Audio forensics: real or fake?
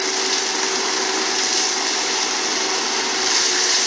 real